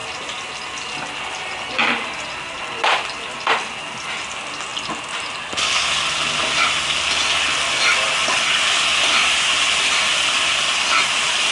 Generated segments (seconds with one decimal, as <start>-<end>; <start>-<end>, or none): none